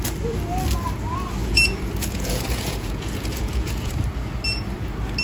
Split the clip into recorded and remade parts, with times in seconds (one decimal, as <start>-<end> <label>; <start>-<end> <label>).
0.0-1.4 recorded; 1.4-3.9 remade; 3.9-5.2 recorded